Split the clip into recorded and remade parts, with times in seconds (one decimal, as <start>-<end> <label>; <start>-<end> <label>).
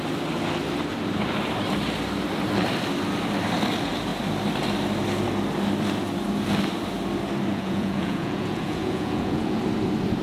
0.0-7.5 recorded; 7.5-9.6 remade; 9.6-10.2 recorded